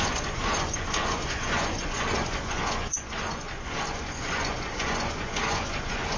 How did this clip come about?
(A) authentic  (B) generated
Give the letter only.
B